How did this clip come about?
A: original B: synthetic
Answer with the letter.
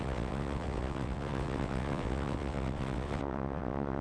B